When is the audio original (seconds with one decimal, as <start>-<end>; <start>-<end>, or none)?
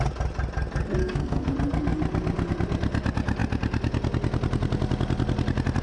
0.0-1.0; 1.5-5.8